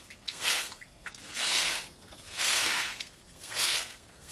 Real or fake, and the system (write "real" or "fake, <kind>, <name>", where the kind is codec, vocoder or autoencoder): fake, codec, SNAC